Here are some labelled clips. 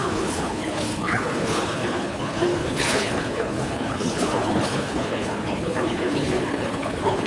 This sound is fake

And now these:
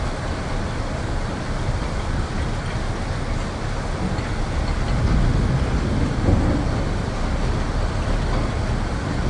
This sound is real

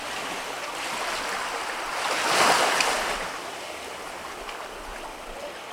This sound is real